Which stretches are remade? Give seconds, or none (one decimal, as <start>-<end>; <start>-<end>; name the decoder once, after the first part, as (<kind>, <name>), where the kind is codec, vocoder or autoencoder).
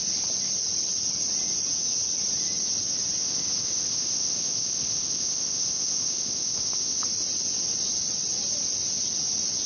3.2-7.0 (codec, ZipCodec)